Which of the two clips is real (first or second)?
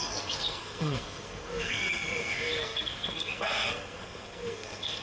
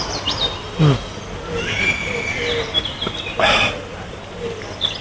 second